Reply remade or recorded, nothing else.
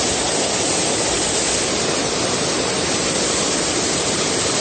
recorded